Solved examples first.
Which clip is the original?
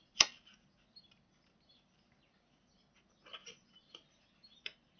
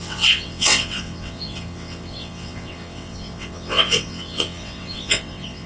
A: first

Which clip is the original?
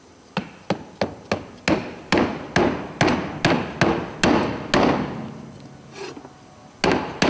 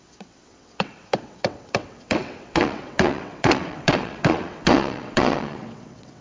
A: first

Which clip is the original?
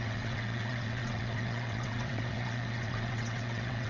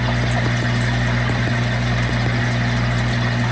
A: second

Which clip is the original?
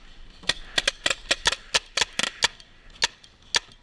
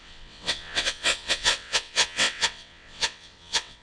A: first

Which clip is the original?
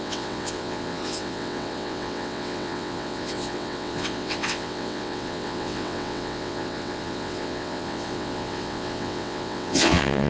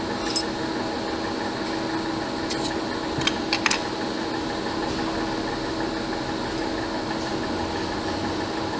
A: second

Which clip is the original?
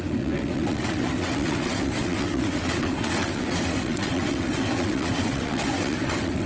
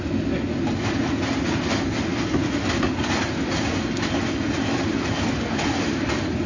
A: second